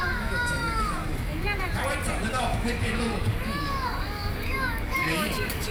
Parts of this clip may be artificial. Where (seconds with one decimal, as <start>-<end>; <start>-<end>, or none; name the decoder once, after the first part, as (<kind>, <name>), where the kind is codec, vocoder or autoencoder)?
0.0-1.4 (codec, DAC); 2.3-5.7